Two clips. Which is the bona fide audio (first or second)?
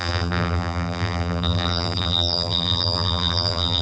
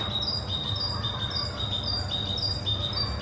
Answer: second